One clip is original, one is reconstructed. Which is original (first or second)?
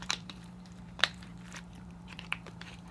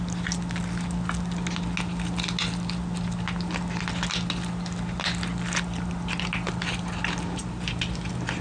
second